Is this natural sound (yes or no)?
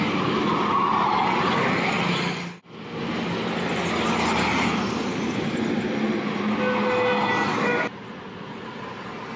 yes